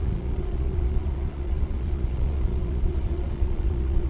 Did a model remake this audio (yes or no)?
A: yes